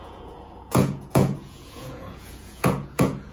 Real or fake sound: fake